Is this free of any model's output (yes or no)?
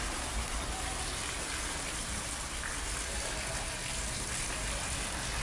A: yes